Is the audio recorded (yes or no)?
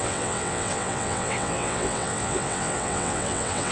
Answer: no